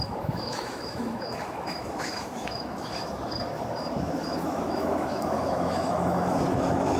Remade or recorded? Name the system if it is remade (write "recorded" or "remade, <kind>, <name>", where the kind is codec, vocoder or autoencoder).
remade, autoencoder, DAC-VAE